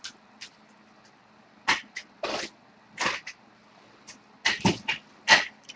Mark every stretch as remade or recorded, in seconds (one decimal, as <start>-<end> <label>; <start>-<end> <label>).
0.0-5.8 recorded